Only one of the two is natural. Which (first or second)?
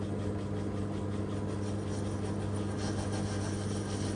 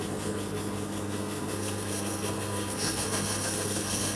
first